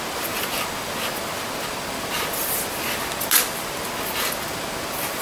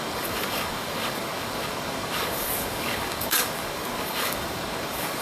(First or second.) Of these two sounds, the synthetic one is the second